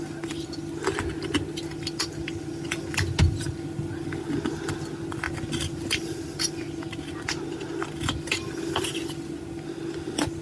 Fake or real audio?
real